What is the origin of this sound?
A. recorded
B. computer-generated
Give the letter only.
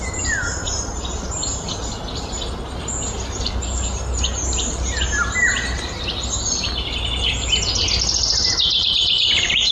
A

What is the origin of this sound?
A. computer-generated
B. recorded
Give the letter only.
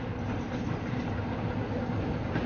B